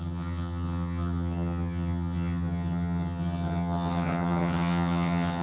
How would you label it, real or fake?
fake